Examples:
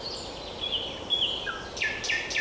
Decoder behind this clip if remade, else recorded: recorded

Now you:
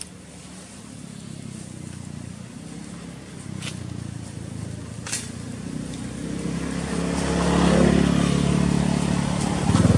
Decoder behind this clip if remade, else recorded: recorded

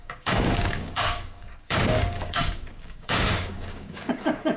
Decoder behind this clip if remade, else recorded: remade, codec, DAC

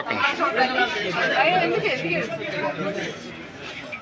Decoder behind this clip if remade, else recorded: recorded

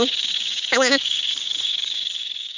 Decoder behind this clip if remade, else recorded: remade, codec, DAC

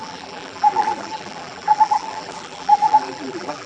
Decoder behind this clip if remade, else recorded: remade, vocoder, BigVGAN v2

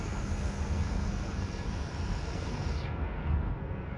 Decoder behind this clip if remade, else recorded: remade, codec, SNAC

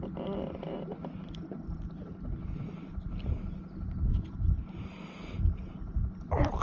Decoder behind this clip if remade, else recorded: recorded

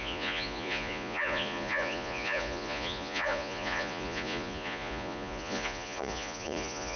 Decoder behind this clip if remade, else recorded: remade, vocoder, Vocos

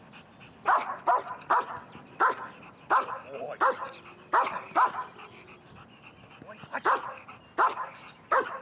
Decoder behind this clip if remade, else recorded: recorded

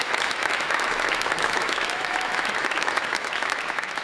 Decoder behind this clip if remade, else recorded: remade, autoencoder, DAC-VAE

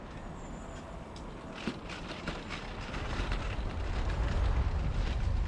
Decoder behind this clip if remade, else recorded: recorded